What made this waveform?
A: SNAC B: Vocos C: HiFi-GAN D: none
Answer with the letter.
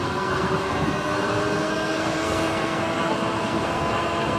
A